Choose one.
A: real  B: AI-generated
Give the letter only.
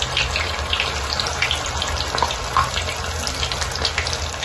A